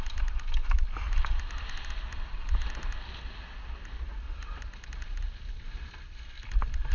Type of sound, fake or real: real